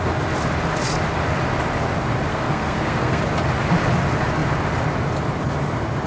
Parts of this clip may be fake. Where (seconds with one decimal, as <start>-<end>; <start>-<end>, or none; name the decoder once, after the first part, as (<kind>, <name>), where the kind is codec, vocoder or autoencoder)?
2.3-3.2 (codec, SNAC)